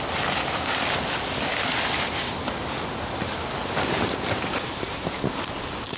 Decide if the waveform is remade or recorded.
recorded